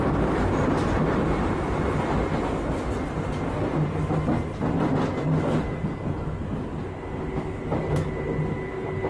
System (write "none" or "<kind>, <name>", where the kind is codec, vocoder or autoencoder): none